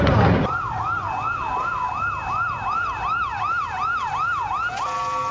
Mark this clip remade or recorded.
recorded